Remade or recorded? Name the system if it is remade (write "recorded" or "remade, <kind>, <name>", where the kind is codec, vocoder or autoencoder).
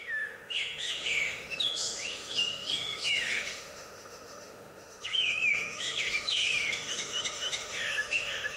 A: remade, autoencoder, DAC-VAE